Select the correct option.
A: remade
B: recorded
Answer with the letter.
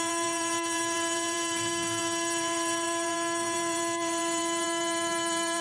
A